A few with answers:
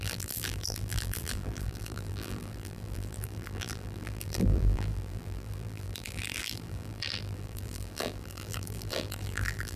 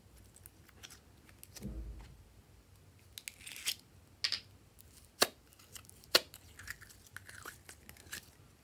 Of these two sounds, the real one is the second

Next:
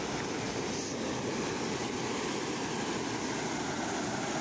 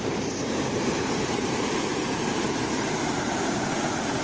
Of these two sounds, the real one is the first